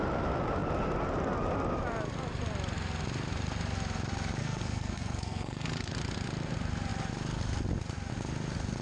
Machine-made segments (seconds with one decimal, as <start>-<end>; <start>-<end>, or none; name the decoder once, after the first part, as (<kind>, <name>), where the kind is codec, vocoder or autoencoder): 4.4-5.9 (codec, SNAC)